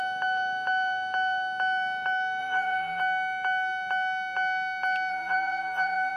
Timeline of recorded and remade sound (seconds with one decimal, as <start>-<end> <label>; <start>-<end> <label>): 0.0-2.4 recorded; 2.4-3.0 remade; 3.0-5.1 recorded; 5.1-6.2 remade